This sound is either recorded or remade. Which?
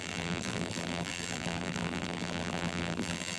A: remade